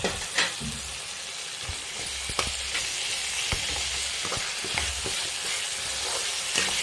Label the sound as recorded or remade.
recorded